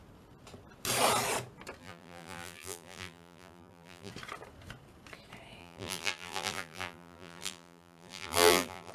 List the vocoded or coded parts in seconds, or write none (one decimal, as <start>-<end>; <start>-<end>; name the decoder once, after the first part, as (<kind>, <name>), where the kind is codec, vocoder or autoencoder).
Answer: 1.8-4.1 (vocoder, BigVGAN v2); 5.6-8.9